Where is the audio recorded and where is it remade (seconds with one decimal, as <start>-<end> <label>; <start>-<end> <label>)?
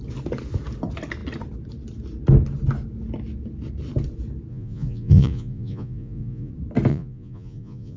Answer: 0.0-4.5 recorded; 4.5-6.5 remade; 6.5-6.9 recorded; 6.9-8.0 remade